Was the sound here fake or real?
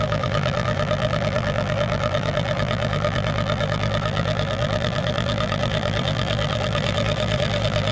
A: fake